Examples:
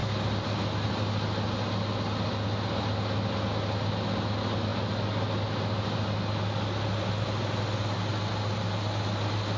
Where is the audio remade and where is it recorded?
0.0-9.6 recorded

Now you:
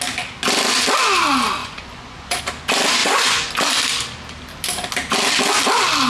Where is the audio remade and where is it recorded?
0.0-1.6 recorded; 1.6-2.4 remade; 2.4-3.0 recorded; 3.0-3.5 remade; 3.5-6.1 recorded

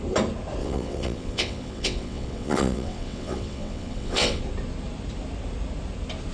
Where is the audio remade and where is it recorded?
0.0-0.6 recorded; 0.6-4.4 remade; 4.4-6.3 recorded

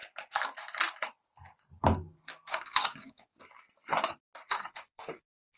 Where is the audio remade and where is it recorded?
0.0-2.5 recorded; 2.5-3.3 remade; 3.3-4.5 recorded; 4.5-5.6 remade